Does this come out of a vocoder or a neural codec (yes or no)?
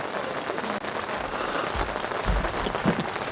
no